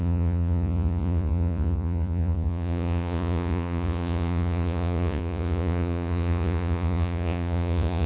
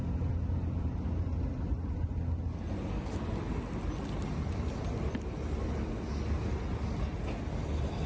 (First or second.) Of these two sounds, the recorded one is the second